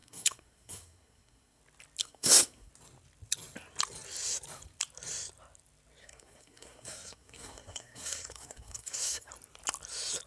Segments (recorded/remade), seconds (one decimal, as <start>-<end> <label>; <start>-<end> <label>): 0.0-1.6 remade; 1.6-2.0 recorded; 2.0-2.7 remade; 2.7-6.0 recorded; 6.0-9.3 remade; 9.3-10.3 recorded